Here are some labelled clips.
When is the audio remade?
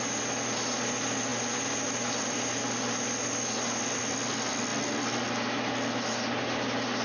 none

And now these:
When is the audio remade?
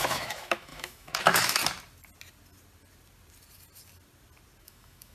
0.0-1.6; 4.6-5.1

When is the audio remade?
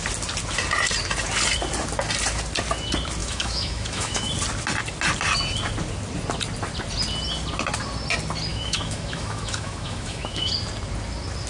3.2-4.3; 8.5-10.5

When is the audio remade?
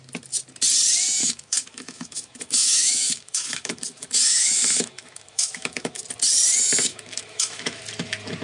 1.2-6.0; 6.9-7.8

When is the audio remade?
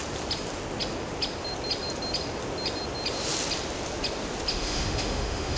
4.5-5.6